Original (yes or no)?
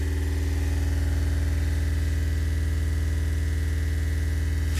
yes